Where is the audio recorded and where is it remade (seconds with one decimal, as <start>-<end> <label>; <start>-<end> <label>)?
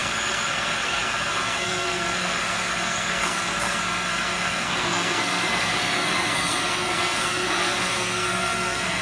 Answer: 0.0-9.0 remade